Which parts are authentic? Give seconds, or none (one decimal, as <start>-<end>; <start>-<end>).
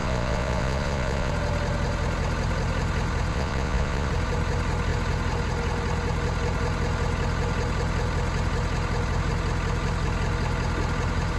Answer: 1.3-3.3; 4.1-11.4